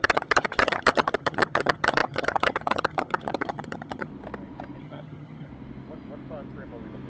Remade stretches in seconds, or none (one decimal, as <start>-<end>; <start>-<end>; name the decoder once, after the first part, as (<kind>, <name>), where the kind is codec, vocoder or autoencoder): 0.0-4.1 (vocoder, HiFi-GAN); 4.8-5.5